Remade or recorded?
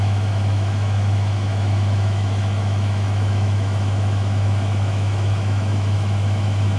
remade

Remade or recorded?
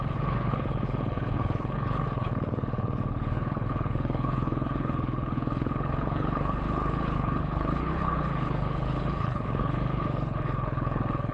remade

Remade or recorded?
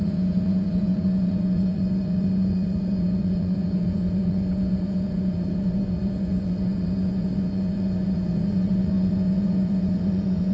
remade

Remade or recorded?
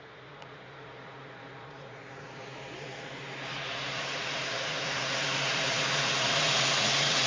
remade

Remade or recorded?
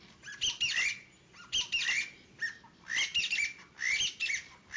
recorded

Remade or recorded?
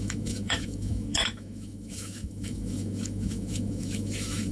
remade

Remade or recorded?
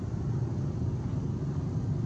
recorded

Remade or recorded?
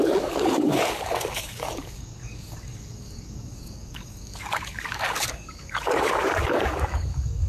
remade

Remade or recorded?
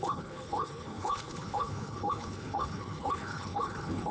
remade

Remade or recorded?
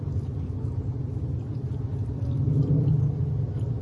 recorded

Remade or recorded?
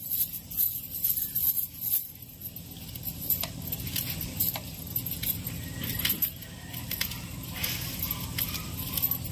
recorded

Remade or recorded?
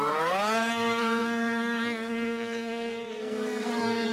remade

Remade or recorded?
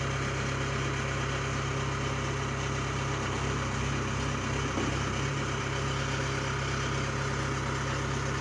recorded